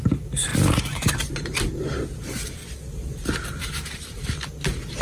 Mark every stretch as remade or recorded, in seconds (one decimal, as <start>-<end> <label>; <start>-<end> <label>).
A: 0.0-0.5 remade; 0.5-1.3 recorded; 1.3-2.6 remade; 2.6-3.5 recorded; 3.5-5.0 remade